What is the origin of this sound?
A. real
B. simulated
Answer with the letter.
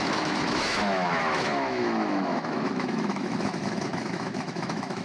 B